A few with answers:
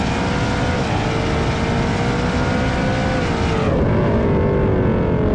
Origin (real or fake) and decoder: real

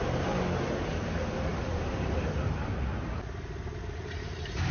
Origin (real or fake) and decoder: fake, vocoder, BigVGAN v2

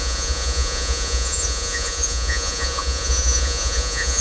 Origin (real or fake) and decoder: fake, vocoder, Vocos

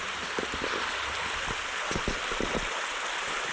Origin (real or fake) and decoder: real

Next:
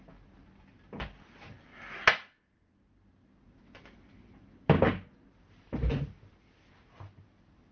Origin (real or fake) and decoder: real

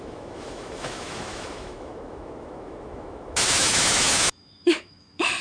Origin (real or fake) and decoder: fake, autoencoder, DAC-VAE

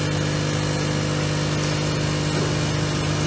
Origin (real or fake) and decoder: real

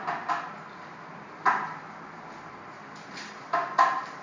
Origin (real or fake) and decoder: real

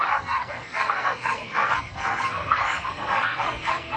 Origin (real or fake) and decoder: fake, codec, SNAC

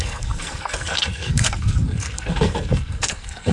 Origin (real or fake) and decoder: fake, codec, SNAC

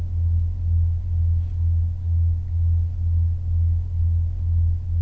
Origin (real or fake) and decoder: real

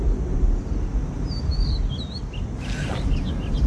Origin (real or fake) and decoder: real